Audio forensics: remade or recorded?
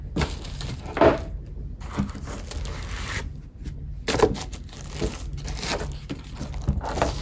recorded